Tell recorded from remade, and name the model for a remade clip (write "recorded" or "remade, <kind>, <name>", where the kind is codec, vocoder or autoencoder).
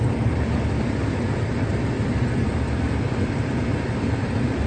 remade, vocoder, BigVGAN v2